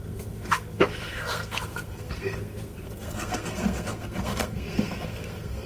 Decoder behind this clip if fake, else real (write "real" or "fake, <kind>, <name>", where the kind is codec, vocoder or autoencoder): fake, codec, SNAC